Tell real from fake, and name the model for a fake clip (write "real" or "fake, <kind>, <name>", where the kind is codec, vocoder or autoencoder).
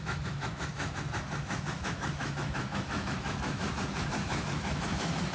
fake, autoencoder, DAC-VAE